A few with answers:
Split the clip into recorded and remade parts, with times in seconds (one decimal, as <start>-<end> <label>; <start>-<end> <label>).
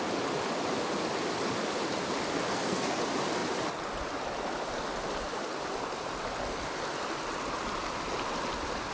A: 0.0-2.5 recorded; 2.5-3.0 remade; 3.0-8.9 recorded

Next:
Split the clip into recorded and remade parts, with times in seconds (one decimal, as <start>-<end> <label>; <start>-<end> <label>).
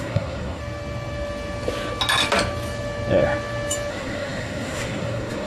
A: 0.0-0.6 remade; 0.6-3.9 recorded; 3.9-5.5 remade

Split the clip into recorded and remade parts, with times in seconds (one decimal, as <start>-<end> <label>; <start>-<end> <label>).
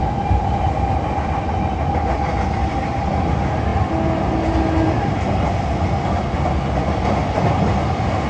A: 0.0-8.3 recorded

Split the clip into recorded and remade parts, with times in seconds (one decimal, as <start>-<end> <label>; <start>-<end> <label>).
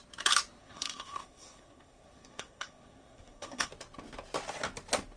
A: 0.0-0.6 recorded; 0.6-3.7 remade; 3.7-5.2 recorded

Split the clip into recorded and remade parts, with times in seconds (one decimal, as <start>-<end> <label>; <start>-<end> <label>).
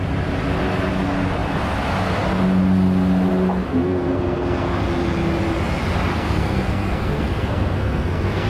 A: 0.0-3.7 recorded; 3.7-4.7 remade; 4.7-6.1 recorded; 6.1-8.5 remade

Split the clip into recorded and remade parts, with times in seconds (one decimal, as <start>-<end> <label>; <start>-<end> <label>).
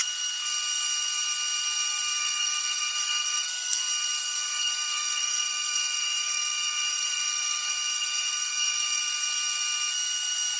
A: 0.0-2.2 recorded; 2.2-3.8 remade; 3.8-4.2 recorded; 4.2-9.0 remade; 9.0-10.6 recorded